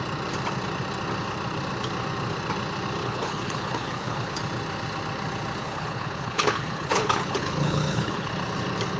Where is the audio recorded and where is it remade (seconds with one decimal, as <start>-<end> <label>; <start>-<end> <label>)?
0.0-3.0 recorded; 3.0-4.4 remade; 4.4-5.6 recorded; 5.6-8.3 remade; 8.3-9.0 recorded